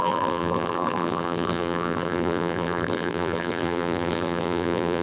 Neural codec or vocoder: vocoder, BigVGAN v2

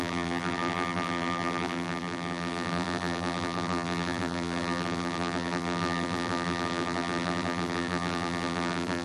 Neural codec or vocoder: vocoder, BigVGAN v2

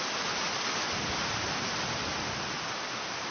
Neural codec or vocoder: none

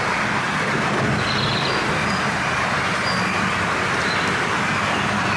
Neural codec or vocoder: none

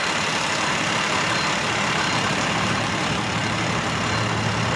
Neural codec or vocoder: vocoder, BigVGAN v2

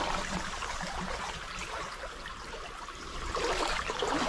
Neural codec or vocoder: none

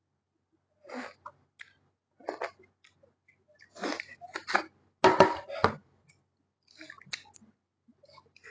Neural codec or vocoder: none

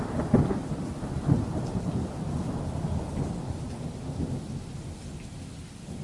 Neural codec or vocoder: none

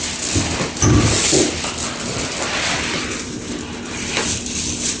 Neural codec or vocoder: none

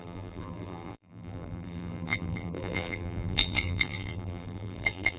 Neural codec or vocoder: vocoder, BigVGAN v2